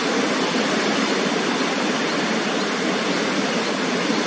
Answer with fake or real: real